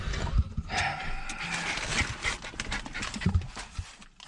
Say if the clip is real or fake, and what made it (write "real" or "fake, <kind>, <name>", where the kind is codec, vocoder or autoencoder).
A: real